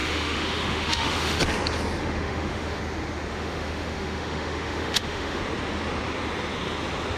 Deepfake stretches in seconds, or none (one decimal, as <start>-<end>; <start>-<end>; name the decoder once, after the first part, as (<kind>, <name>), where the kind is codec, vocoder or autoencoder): 0.0-1.4 (autoencoder, DAC-VAE); 2.0-2.8; 3.3-5.4